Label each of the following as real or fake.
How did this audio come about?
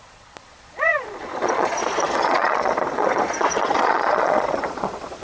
fake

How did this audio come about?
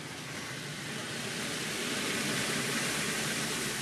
real